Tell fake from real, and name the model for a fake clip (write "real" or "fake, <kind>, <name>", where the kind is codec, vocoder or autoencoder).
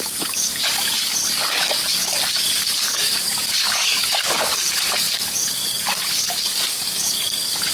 fake, codec, DAC